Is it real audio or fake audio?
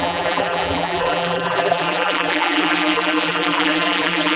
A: fake